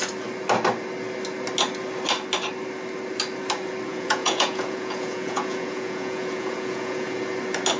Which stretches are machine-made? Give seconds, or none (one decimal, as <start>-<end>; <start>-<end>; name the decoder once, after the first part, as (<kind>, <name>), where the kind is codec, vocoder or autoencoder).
3.9-7.2 (vocoder, Vocos)